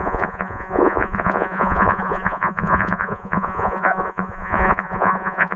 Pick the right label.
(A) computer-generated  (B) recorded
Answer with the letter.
A